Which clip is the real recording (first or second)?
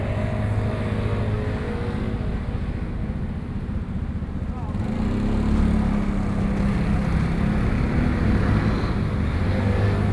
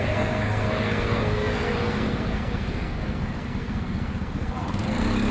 first